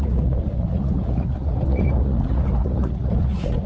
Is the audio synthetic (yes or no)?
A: yes